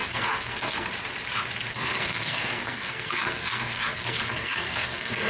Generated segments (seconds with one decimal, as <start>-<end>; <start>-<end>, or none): 0.0-0.9; 1.7-5.3